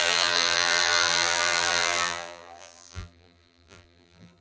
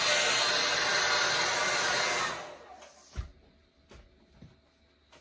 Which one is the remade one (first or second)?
first